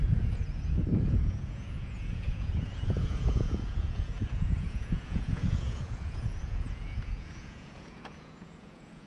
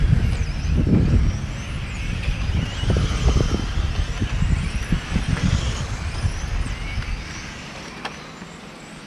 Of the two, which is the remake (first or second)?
first